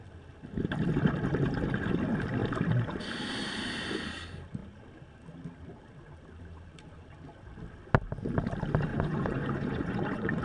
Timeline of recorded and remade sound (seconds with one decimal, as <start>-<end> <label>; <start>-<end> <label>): 0.0-8.9 recorded; 8.9-10.4 remade